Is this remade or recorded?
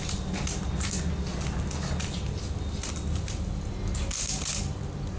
recorded